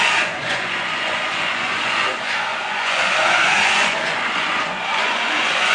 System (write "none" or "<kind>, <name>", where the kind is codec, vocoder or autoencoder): vocoder, Vocos